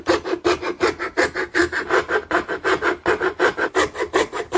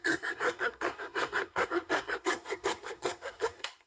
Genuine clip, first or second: first